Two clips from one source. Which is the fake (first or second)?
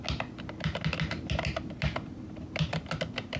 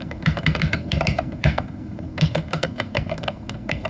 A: second